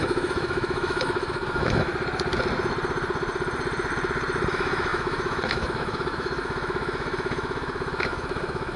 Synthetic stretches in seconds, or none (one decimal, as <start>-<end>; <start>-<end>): 0.0-1.9; 4.5-8.8